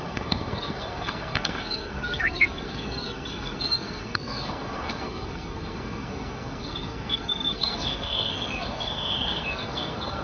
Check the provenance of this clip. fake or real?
fake